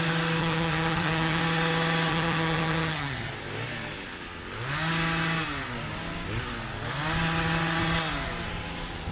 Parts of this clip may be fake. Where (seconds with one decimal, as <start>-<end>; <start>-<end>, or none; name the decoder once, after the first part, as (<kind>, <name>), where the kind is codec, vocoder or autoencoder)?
0.4-1.4 (vocoder, HiFi-GAN); 2.1-3.3